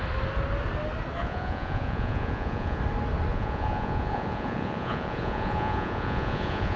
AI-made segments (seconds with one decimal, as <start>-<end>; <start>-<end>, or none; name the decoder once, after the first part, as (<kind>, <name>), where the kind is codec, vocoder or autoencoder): 1.2-2.8 (vocoder, Vocos); 3.3-6.8